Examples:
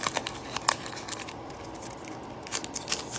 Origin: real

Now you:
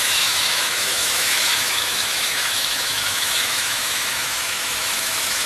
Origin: fake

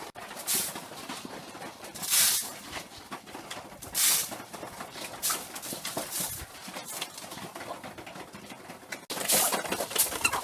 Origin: real